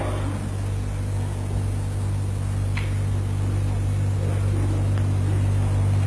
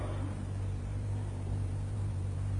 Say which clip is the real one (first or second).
first